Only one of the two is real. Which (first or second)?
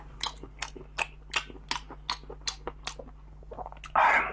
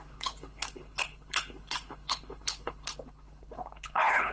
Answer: first